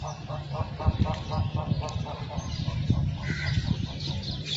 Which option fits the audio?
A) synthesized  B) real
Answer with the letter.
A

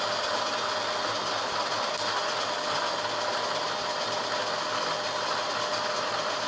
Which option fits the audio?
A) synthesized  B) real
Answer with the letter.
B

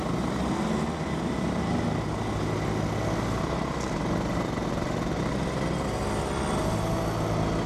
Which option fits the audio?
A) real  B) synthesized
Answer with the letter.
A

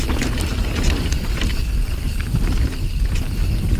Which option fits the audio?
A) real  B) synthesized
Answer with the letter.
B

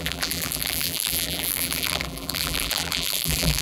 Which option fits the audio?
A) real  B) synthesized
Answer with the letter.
B